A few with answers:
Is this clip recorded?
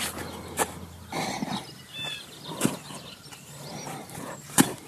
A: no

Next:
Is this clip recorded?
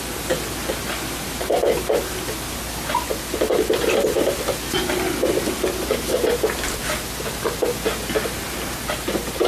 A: yes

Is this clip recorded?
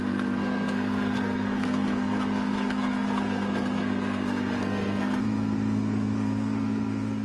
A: no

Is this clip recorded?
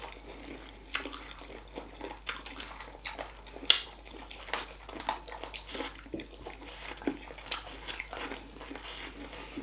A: yes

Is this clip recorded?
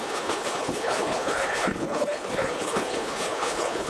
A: no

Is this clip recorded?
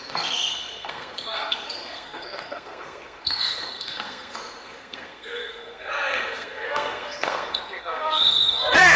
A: no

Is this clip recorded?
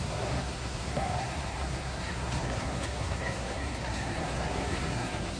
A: no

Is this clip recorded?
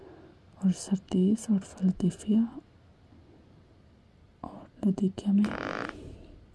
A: yes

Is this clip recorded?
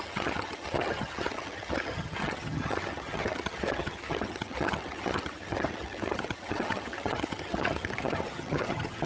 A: no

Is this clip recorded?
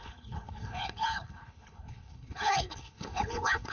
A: no